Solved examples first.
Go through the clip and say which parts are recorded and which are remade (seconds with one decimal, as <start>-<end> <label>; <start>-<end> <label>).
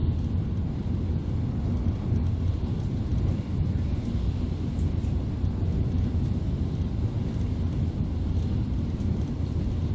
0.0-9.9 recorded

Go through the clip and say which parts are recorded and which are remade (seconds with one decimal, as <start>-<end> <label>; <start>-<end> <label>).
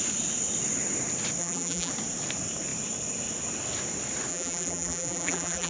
0.0-1.4 recorded; 1.4-1.9 remade; 1.9-4.3 recorded; 4.3-5.7 remade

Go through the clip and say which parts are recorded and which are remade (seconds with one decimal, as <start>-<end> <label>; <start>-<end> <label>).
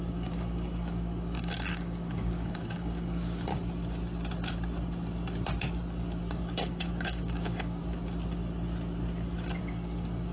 0.0-3.5 remade; 3.5-6.2 recorded; 6.2-7.8 remade; 7.8-9.6 recorded; 9.6-10.3 remade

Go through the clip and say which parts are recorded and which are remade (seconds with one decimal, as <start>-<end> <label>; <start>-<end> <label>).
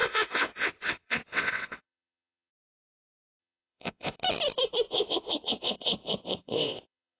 0.0-2.5 remade; 2.5-3.4 recorded; 3.4-4.2 remade; 4.2-4.9 recorded; 4.9-7.2 remade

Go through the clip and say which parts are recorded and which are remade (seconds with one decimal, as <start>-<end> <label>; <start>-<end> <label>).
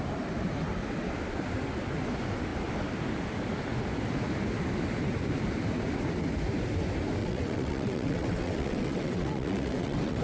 0.0-7.2 recorded; 7.2-10.2 remade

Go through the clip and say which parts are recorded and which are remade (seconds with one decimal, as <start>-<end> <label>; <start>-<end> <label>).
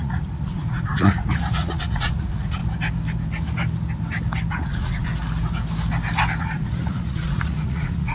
0.0-2.6 remade; 2.6-4.5 recorded; 4.5-5.1 remade; 5.1-6.4 recorded; 6.4-8.1 remade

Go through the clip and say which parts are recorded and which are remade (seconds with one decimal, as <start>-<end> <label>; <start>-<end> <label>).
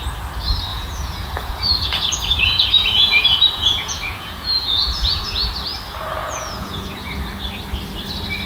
0.0-0.7 recorded; 0.7-5.5 remade; 5.5-6.2 recorded; 6.2-7.1 remade; 7.1-8.5 recorded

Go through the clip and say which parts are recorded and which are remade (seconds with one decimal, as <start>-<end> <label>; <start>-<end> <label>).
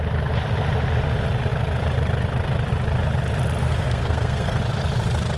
0.0-3.6 recorded; 3.6-4.6 remade; 4.6-5.4 recorded